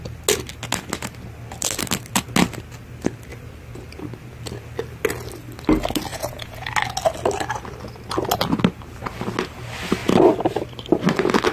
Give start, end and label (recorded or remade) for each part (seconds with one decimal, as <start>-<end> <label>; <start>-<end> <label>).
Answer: 0.0-6.1 recorded; 6.1-6.7 remade; 6.7-11.5 recorded